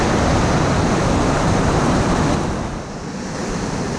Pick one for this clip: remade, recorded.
recorded